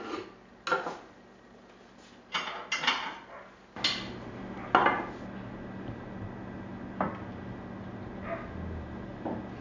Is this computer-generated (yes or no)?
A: no